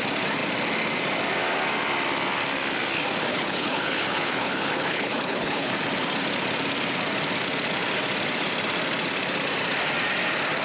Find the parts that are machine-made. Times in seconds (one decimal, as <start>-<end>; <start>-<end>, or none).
3.3-5.7